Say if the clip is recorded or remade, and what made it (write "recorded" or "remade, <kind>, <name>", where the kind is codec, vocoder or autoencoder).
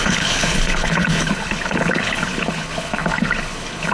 remade, codec, HILCodec